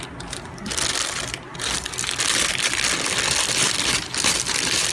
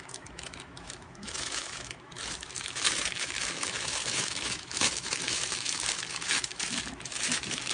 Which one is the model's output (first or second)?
second